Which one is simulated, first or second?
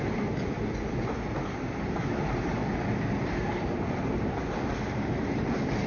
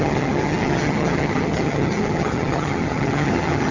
second